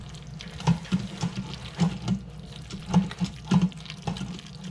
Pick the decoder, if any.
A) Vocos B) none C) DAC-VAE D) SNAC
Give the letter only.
B